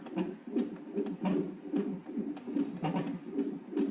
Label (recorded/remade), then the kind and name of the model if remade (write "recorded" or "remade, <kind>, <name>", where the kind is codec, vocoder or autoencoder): recorded